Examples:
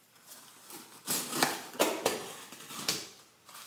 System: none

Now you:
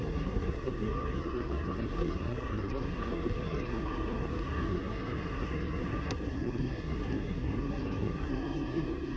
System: codec, SNAC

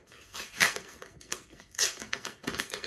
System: codec, SNAC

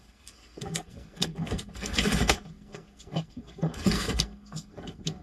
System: codec, SNAC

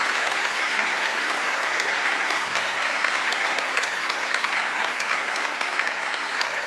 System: codec, SNAC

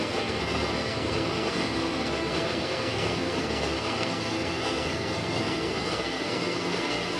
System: codec, SNAC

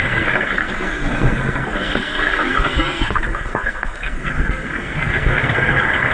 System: codec, SNAC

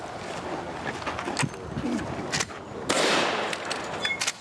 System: none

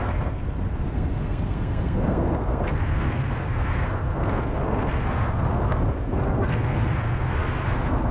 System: codec, SNAC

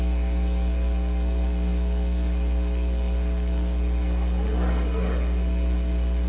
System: codec, SNAC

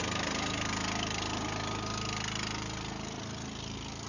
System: none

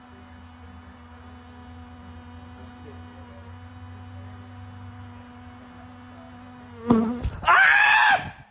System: none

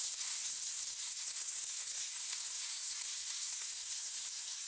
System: codec, SNAC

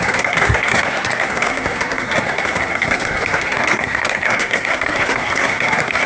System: codec, SNAC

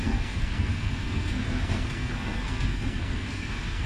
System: codec, SNAC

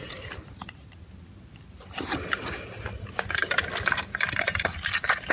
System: none